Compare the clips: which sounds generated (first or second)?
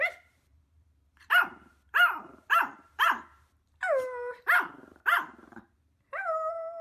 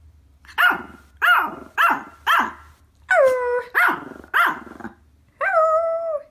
first